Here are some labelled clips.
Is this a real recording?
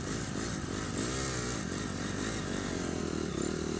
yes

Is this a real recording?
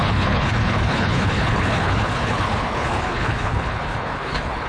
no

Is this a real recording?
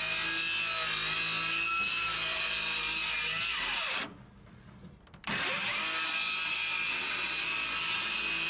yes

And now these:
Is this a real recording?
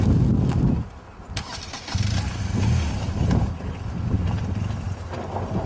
yes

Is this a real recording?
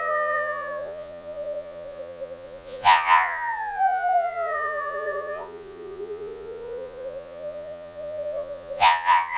no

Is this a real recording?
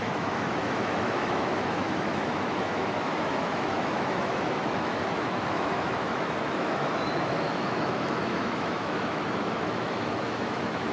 no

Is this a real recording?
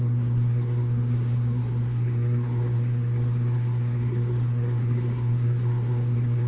no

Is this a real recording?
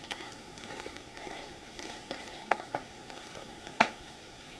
no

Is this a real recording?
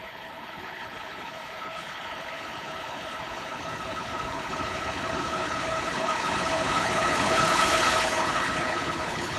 no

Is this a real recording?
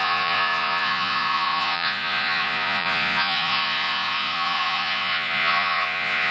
no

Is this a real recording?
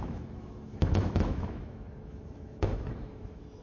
no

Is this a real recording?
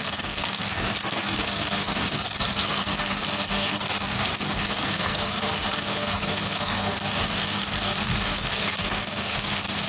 no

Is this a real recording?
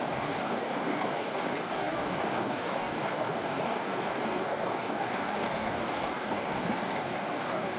no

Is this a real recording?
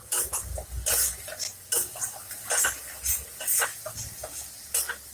yes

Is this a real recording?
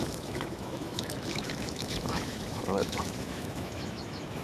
no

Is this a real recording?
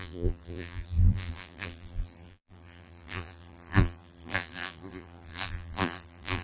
no